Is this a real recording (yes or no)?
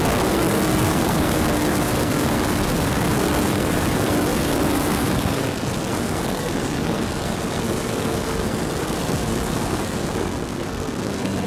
no